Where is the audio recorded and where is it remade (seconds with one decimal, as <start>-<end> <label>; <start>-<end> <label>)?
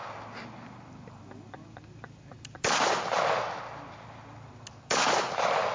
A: 0.0-5.7 recorded